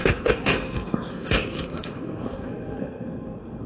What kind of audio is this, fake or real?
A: fake